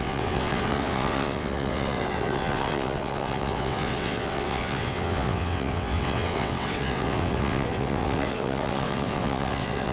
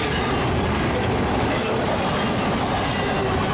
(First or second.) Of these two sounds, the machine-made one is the first